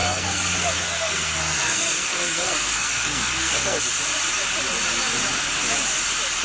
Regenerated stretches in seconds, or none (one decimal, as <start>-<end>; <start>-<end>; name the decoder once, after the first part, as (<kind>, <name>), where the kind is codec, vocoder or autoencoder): 0.0-3.8 (codec, SNAC)